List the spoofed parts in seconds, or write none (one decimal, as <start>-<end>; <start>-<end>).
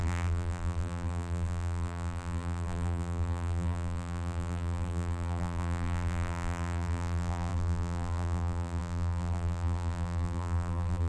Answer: 0.0-11.1